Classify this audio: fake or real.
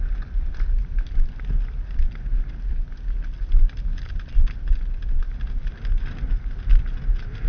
real